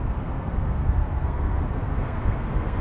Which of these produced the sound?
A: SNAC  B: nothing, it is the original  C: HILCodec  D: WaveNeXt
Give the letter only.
A